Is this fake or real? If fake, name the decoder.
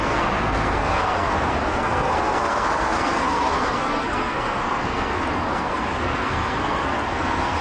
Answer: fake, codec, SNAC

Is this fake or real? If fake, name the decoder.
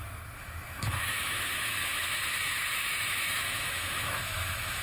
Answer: fake, autoencoder, DAC-VAE